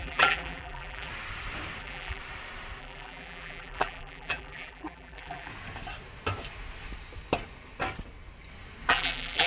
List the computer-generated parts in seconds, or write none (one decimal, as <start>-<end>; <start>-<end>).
0.0-1.1; 1.8-2.2; 2.8-5.5; 8.9-9.5